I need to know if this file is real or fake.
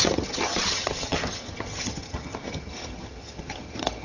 fake